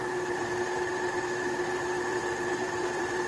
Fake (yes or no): yes